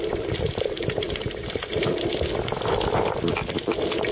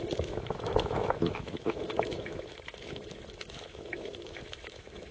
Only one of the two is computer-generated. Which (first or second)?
second